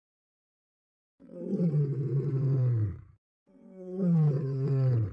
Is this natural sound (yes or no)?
no